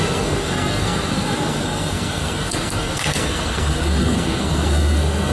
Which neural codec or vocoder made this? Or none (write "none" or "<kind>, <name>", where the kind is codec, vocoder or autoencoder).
codec, SNAC